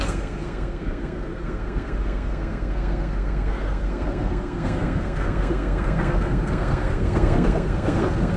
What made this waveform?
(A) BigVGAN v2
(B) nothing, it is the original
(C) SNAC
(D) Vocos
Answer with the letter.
C